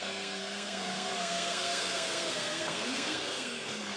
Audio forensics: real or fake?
fake